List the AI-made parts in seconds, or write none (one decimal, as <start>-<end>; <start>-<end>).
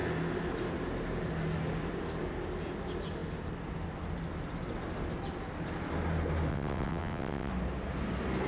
6.5-7.5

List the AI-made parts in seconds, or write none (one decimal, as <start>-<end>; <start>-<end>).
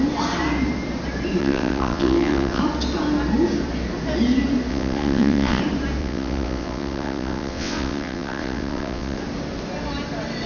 1.4-2.6; 4.7-5.6; 6.0-9.2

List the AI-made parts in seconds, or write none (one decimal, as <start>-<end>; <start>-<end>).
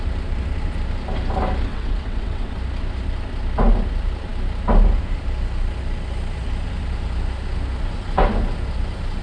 1.7-2.6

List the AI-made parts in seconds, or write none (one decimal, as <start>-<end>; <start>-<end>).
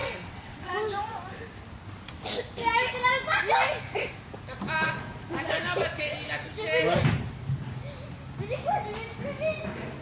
0.0-0.7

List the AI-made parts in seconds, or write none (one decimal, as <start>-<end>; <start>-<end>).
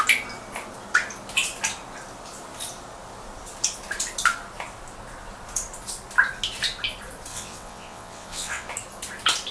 7.3-8.7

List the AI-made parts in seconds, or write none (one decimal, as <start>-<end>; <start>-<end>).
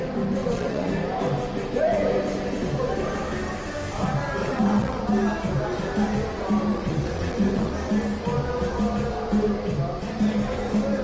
0.4-0.9; 4.4-5.0; 6.7-7.7